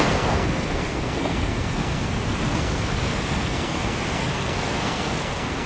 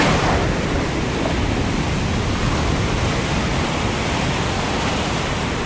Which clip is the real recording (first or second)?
second